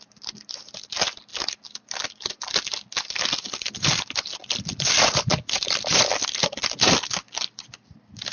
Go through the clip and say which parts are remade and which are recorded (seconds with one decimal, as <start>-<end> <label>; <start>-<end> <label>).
0.0-4.4 recorded; 4.4-7.3 remade; 7.3-8.3 recorded